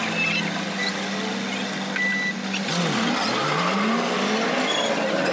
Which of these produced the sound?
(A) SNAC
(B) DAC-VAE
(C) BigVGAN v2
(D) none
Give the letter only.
D